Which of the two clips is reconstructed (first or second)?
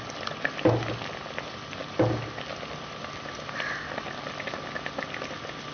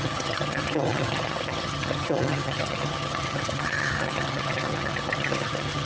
second